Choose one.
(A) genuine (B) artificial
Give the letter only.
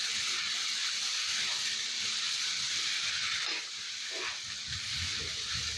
A